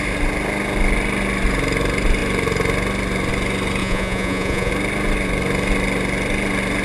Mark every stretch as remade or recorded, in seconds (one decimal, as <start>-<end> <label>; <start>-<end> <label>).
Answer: 0.0-3.8 recorded; 3.8-4.7 remade; 4.7-6.8 recorded